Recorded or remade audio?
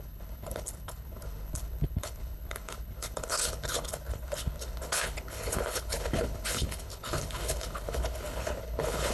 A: remade